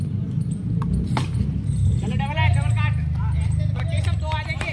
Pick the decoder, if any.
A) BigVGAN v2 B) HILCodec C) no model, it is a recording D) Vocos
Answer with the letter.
C